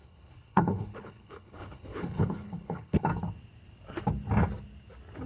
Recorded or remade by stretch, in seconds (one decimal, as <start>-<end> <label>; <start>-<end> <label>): 0.0-3.1 remade; 3.1-5.3 recorded